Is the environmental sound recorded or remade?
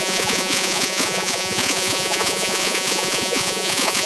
remade